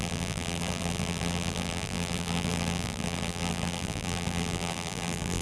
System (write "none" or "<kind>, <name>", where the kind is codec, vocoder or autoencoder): vocoder, BigVGAN v2